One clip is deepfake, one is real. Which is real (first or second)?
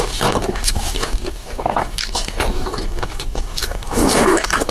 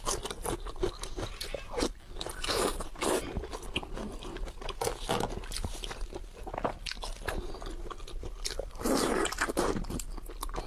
second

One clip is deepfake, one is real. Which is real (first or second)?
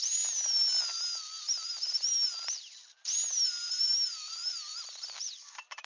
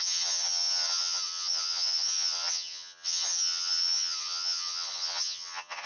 first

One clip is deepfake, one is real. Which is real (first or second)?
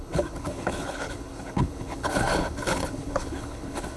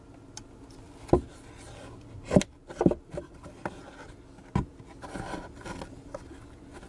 second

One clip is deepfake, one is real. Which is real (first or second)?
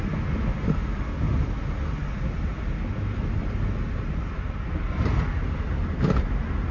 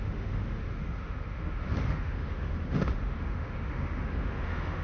first